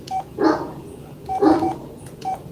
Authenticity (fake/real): fake